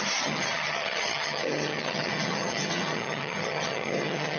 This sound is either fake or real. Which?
fake